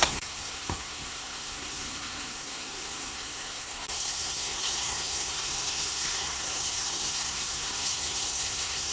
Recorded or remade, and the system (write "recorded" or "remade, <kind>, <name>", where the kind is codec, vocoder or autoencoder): remade, codec, SNAC